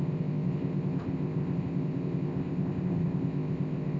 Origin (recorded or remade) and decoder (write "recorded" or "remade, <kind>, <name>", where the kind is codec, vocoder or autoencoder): remade, codec, ZipCodec